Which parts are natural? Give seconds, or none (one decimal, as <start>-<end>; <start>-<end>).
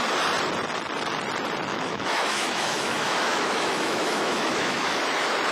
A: 0.0-1.7; 5.0-5.5